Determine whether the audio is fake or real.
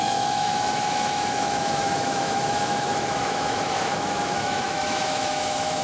fake